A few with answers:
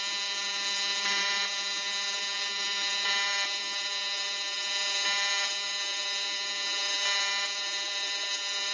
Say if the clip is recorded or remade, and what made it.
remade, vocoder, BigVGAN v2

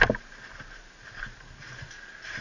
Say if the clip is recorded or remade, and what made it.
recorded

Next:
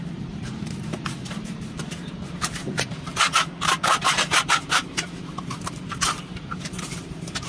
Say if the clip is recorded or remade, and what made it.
remade, vocoder, BigVGAN v2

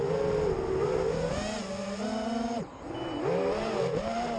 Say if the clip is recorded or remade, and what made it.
recorded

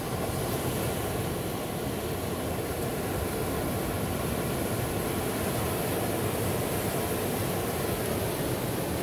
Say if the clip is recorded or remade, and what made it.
recorded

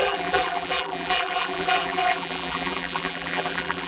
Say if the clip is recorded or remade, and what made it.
remade, vocoder, BigVGAN v2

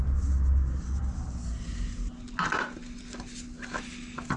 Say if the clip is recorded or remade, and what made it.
recorded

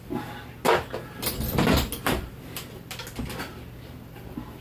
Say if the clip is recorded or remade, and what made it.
recorded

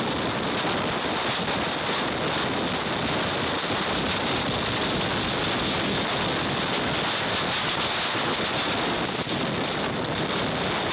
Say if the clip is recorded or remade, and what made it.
recorded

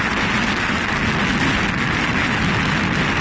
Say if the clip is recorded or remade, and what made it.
recorded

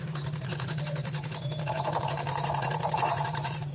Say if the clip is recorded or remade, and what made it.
remade, vocoder, BigVGAN v2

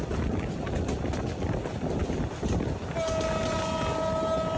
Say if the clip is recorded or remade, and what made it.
recorded